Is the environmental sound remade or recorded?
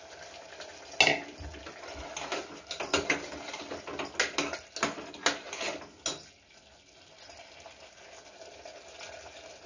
recorded